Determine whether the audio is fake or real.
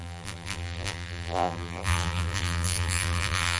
fake